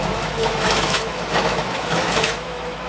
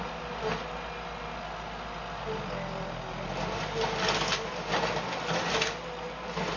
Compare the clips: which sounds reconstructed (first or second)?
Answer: first